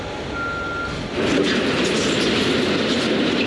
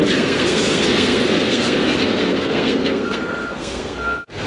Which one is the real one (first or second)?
first